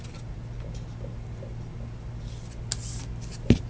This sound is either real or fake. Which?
real